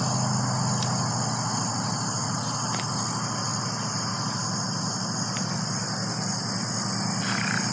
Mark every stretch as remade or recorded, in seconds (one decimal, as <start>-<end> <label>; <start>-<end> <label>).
0.0-7.7 recorded

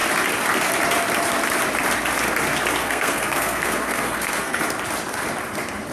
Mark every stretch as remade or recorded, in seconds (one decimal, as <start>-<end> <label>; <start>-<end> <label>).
0.0-2.8 recorded; 2.8-4.6 remade; 4.6-5.9 recorded

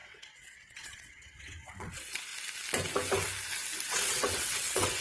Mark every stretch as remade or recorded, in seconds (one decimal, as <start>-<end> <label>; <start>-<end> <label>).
0.0-2.3 remade; 2.3-3.9 recorded; 3.9-5.0 remade

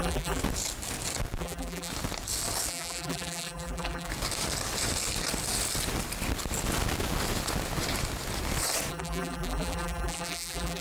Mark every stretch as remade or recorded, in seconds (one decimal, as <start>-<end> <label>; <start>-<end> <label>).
0.0-0.4 remade; 0.4-1.4 recorded; 1.4-1.9 remade; 1.9-2.7 recorded; 2.7-4.1 remade; 4.1-8.9 recorded; 8.9-10.8 remade

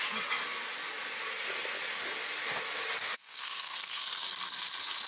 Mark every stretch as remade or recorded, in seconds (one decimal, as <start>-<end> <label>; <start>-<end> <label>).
0.0-3.0 recorded; 3.0-4.2 remade; 4.2-5.1 recorded

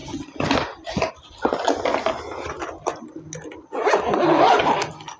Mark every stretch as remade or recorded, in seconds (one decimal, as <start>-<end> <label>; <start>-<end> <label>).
0.0-1.1 remade; 1.1-4.1 recorded; 4.1-4.6 remade; 4.6-5.2 recorded

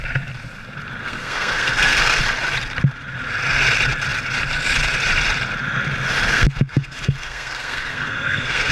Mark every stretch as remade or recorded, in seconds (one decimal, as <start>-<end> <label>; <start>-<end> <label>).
0.0-1.0 recorded; 1.0-2.2 remade; 2.2-6.3 recorded; 6.3-8.7 remade

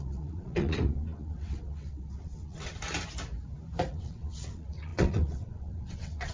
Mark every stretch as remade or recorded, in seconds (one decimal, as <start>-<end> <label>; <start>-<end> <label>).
0.0-2.7 remade; 2.7-3.9 recorded; 3.9-6.3 remade